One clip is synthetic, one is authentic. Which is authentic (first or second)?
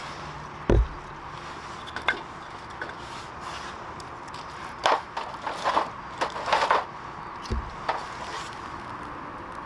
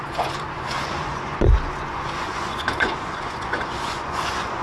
first